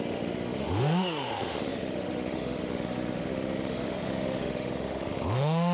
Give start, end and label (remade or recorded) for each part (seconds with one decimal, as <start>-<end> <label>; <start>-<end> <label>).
0.0-5.7 remade